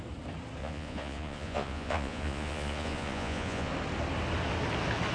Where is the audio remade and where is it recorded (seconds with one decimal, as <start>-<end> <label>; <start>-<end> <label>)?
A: 0.0-0.6 recorded; 0.6-3.7 remade; 3.7-5.1 recorded